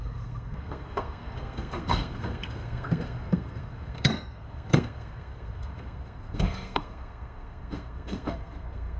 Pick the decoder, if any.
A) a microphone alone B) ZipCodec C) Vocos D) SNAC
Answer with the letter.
D